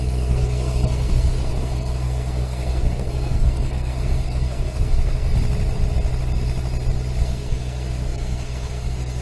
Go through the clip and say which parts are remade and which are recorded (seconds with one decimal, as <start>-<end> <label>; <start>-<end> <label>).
0.0-5.3 remade; 5.3-7.2 recorded; 7.2-9.2 remade